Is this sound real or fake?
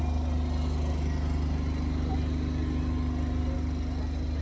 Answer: real